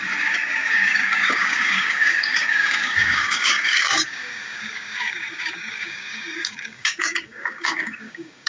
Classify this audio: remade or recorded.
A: remade